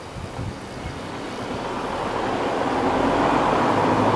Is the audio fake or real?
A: real